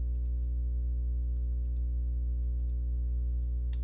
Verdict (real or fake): real